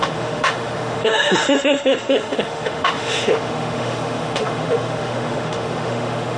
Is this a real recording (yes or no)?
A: no